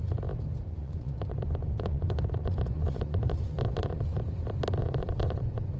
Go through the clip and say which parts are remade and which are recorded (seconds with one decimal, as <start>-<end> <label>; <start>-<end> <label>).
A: 0.0-0.7 recorded; 0.7-4.2 remade; 4.2-4.8 recorded; 4.8-5.8 remade

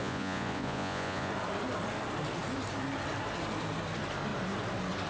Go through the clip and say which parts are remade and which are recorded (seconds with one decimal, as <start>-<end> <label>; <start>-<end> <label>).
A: 0.0-1.3 remade; 1.3-5.1 recorded

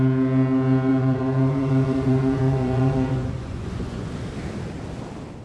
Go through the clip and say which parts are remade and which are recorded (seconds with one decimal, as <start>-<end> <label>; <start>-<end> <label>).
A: 0.0-0.9 recorded; 0.9-4.1 remade; 4.1-5.4 recorded

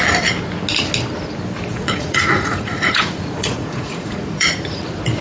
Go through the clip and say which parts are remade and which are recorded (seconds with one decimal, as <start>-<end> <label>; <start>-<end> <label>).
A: 0.0-1.7 recorded; 1.7-4.8 remade; 4.8-5.2 recorded

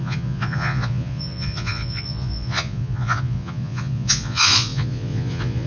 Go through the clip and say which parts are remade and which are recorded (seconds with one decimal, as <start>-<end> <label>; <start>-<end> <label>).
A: 0.0-5.7 remade